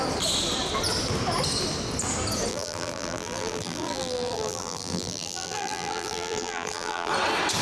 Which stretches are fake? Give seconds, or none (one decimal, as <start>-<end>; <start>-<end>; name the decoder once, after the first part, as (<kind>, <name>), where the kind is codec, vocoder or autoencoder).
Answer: 2.5-7.1 (vocoder, BigVGAN v2)